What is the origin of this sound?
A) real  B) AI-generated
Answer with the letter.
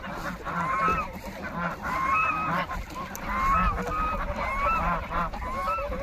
A